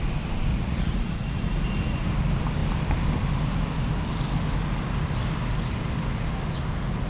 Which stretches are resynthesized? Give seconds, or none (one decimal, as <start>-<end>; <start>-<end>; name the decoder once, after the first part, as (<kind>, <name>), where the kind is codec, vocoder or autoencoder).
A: 0.5-1.6 (vocoder, Vocos)